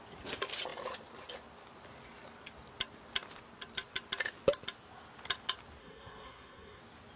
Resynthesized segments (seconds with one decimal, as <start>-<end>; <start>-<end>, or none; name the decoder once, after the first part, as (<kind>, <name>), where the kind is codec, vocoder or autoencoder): 5.8-6.8 (codec, SNAC)